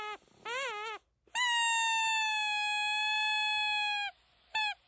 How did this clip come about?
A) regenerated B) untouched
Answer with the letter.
B